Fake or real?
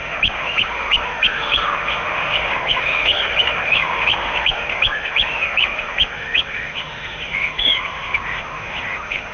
fake